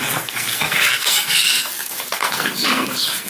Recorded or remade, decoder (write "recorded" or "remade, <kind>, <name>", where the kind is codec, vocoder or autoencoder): remade, codec, SNAC